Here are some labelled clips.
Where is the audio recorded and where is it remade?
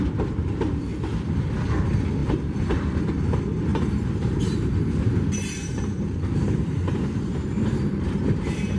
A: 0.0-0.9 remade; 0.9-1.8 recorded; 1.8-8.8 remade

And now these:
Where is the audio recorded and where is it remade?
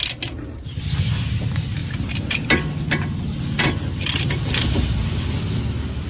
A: 0.0-6.1 recorded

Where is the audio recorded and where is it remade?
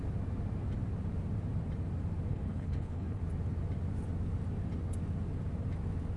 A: 0.0-2.3 recorded; 2.3-3.2 remade; 3.2-6.2 recorded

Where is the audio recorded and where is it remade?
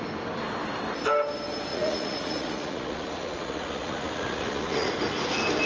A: 0.0-1.7 recorded; 1.7-4.9 remade; 4.9-5.7 recorded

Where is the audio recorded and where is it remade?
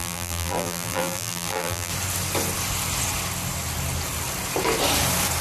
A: 0.0-1.9 remade; 1.9-5.4 recorded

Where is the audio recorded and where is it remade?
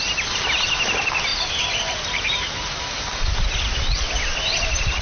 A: 0.0-1.3 recorded; 1.3-2.7 remade; 2.7-3.7 recorded; 3.7-5.0 remade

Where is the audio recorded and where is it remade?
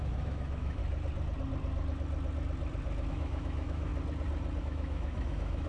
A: 0.0-0.8 remade; 0.8-3.1 recorded; 3.1-3.9 remade; 3.9-4.6 recorded; 4.6-5.7 remade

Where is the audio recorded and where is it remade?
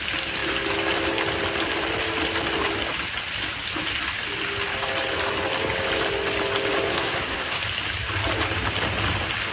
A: 0.0-6.9 recorded; 6.9-7.6 remade; 7.6-9.5 recorded